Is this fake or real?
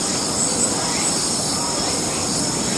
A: real